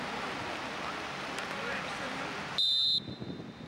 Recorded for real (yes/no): yes